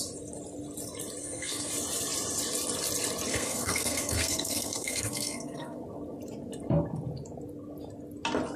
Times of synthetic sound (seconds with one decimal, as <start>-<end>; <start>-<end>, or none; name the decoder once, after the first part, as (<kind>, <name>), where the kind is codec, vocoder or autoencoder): 1.2-1.7 (codec, SNAC); 3.3-5.8